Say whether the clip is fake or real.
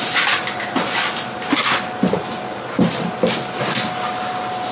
real